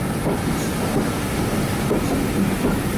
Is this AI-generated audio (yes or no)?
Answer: no